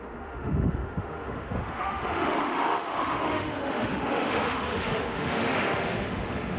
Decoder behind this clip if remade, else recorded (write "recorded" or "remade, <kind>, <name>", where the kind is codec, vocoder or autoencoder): remade, autoencoder, DAC-VAE